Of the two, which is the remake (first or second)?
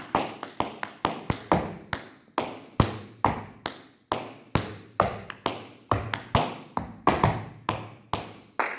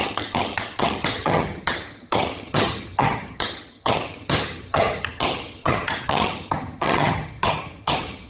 second